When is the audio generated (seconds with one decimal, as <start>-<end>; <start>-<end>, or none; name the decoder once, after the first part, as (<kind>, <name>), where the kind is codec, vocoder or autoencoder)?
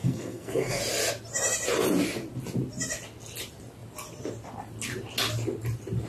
0.0-0.8 (codec, SNAC)